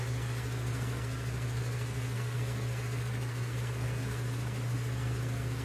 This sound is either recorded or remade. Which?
remade